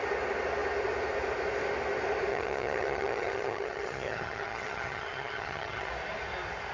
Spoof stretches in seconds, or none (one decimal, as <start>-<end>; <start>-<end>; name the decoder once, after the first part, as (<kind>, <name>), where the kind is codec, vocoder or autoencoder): 2.3-5.9 (vocoder, HiFi-GAN)